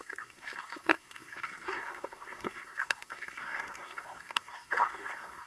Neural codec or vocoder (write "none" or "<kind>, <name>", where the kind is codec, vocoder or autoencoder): codec, SNAC